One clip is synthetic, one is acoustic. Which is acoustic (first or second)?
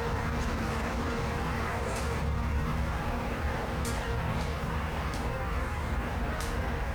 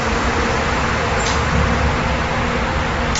second